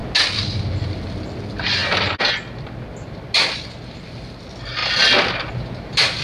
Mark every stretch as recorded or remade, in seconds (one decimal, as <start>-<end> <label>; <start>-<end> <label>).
0.0-6.2 recorded